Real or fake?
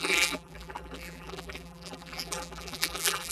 fake